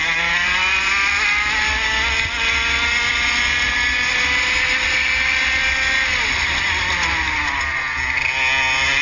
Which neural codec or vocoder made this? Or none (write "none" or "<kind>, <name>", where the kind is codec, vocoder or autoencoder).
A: none